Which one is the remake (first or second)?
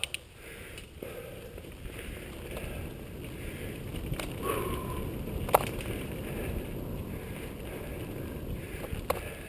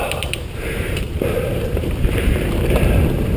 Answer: second